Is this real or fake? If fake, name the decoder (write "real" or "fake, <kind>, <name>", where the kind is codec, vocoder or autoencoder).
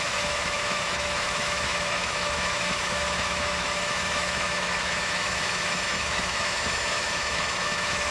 fake, autoencoder, DAC-VAE